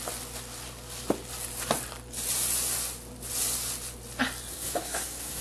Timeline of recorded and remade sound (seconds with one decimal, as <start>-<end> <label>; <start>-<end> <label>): 0.0-4.5 recorded; 4.5-5.4 remade